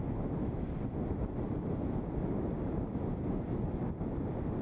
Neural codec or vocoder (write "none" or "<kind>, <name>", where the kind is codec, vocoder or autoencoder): none